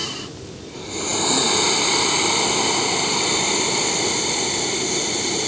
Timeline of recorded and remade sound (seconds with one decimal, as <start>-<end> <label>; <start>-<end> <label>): 0.0-0.5 remade; 0.5-5.5 recorded